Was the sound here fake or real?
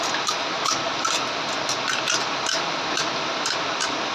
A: real